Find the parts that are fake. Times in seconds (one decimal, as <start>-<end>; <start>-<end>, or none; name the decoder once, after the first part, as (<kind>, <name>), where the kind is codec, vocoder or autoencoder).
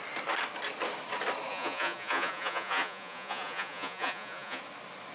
1.5-4.6 (vocoder, Vocos)